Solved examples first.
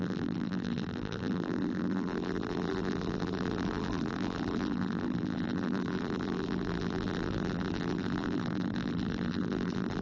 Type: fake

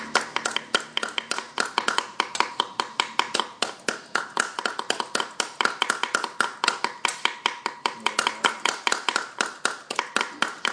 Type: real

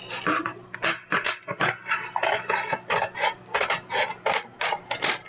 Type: real